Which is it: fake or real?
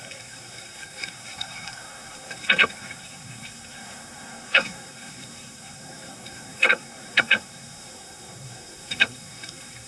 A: fake